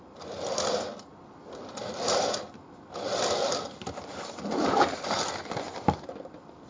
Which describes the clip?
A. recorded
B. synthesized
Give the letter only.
A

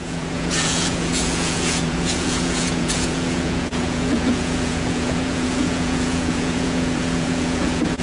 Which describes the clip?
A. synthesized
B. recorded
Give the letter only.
A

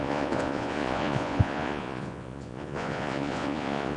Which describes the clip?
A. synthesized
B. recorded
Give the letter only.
A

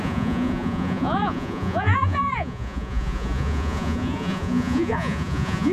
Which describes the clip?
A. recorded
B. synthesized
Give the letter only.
B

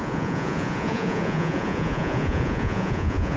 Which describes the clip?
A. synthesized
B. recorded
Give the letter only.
A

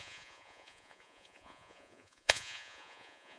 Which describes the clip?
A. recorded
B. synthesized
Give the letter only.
B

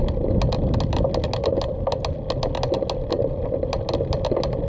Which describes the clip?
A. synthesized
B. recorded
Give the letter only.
B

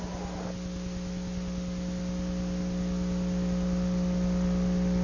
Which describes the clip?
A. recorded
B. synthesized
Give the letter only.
A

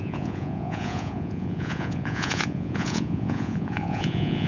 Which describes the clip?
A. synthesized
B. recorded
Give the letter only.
A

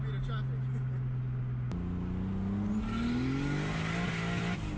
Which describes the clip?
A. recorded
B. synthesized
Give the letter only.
A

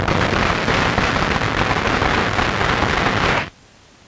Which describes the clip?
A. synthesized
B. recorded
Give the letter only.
B